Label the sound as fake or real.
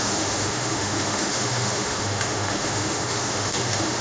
fake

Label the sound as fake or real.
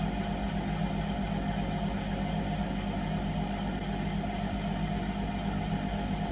real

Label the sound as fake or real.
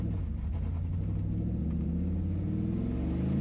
real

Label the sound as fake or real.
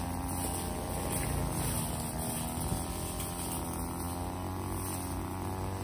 real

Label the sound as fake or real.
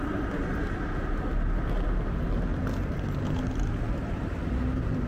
real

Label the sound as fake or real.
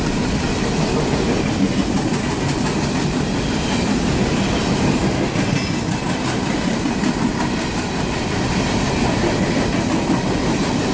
real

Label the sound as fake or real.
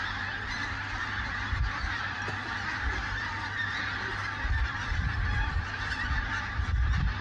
fake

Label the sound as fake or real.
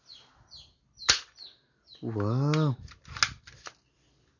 real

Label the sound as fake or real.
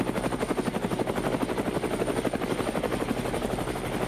real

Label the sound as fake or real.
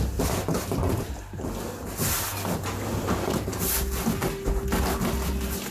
real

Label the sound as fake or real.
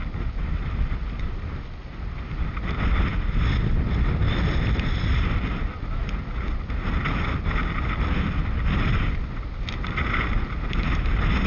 real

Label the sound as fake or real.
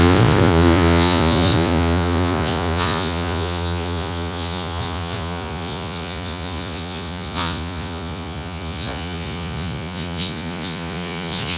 fake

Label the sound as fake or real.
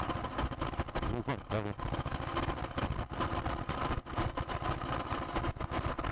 real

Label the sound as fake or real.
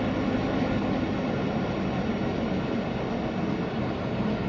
real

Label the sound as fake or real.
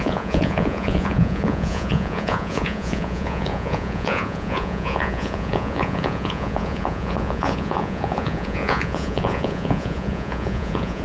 fake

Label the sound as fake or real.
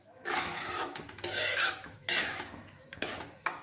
fake